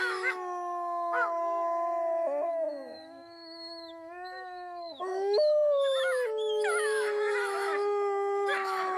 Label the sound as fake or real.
fake